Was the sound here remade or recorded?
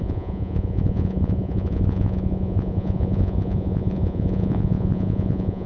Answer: remade